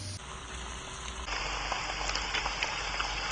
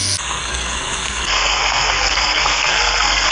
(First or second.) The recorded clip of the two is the first